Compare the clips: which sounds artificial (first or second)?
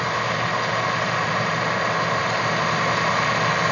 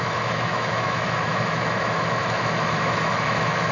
second